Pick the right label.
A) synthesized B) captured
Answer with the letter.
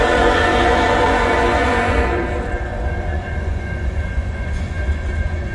A